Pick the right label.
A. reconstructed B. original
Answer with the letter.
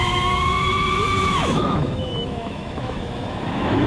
A